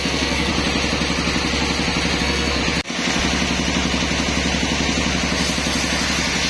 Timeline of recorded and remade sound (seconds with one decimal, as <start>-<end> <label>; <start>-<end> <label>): 0.0-0.5 remade; 0.5-2.2 recorded; 2.2-2.6 remade; 2.6-6.5 recorded

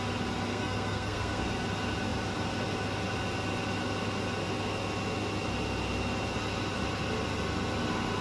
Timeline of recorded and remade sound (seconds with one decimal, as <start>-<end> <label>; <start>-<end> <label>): 0.0-0.5 recorded; 0.5-1.4 remade; 1.4-8.2 recorded

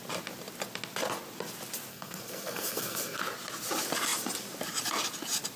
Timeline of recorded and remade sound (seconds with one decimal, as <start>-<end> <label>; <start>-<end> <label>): 0.0-1.9 recorded; 1.9-3.2 remade; 3.2-5.6 recorded

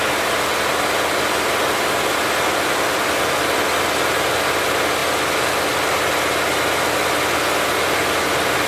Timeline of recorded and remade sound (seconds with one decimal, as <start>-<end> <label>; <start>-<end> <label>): 0.0-8.7 recorded